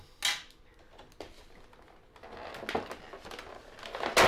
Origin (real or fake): real